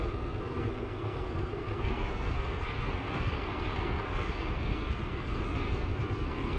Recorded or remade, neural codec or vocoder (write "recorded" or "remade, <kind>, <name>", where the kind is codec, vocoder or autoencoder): remade, codec, SNAC